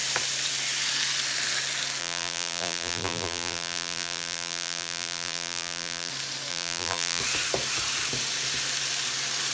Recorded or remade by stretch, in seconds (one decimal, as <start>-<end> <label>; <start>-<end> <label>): 0.0-2.0 recorded; 2.0-6.1 remade; 6.1-6.5 recorded; 6.5-7.2 remade; 7.2-9.5 recorded

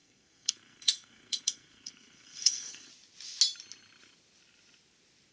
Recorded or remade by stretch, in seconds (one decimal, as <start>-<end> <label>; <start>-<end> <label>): 0.0-2.9 remade; 2.9-5.3 recorded

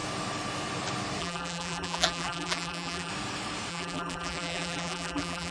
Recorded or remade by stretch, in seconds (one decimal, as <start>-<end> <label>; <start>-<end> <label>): 0.0-1.2 recorded; 1.2-3.1 remade; 3.1-3.7 recorded; 3.7-5.5 remade

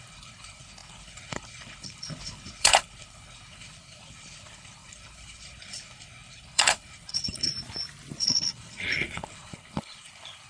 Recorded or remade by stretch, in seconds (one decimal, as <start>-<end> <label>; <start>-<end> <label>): 0.0-7.5 remade; 7.5-8.2 recorded; 8.2-10.5 remade